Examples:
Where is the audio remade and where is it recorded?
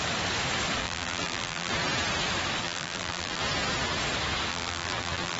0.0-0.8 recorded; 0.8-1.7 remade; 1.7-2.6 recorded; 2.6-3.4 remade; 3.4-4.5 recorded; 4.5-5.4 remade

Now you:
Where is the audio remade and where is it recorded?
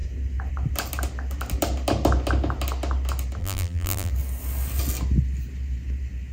0.0-3.4 recorded; 3.4-4.1 remade; 4.1-6.3 recorded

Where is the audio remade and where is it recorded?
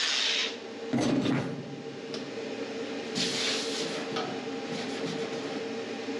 0.0-6.2 recorded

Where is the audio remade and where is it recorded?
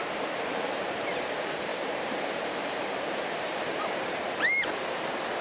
0.0-0.5 recorded; 0.5-1.0 remade; 1.0-1.7 recorded; 1.7-4.3 remade; 4.3-5.4 recorded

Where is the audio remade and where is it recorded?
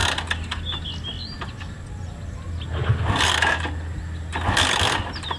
0.0-5.4 recorded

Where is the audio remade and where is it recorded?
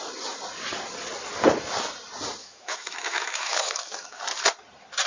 0.0-2.4 recorded; 2.4-4.2 remade; 4.2-5.1 recorded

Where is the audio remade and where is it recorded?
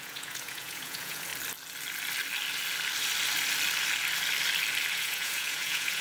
0.0-1.3 remade; 1.3-4.9 recorded; 4.9-6.0 remade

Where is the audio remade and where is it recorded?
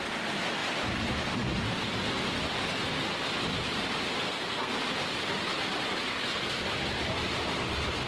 0.0-4.3 recorded; 4.3-4.8 remade; 4.8-8.1 recorded